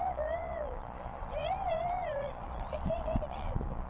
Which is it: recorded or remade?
remade